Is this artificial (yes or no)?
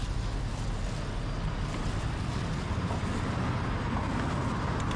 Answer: no